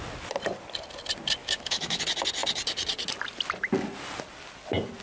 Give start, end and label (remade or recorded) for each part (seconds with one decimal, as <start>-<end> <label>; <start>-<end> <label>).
0.0-1.4 recorded; 1.4-2.0 remade; 2.0-5.0 recorded